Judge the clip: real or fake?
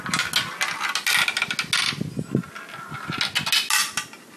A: real